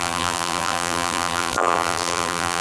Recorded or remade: remade